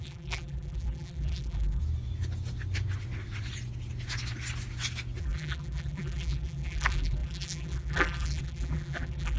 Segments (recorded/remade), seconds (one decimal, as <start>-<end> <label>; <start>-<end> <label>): 0.0-1.8 remade; 1.8-5.2 recorded; 5.2-9.4 remade